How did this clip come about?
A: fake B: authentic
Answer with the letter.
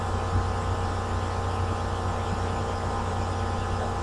B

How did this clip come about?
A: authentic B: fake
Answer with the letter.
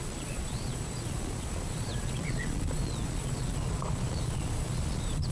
B